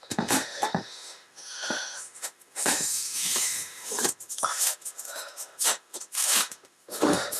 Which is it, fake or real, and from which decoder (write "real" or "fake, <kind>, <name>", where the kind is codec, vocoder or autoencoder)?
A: fake, autoencoder, DAC-VAE